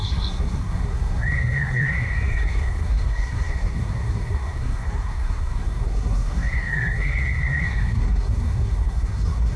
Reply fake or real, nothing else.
fake